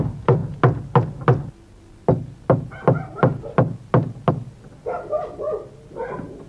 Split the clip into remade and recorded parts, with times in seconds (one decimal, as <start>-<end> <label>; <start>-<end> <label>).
0.0-6.5 recorded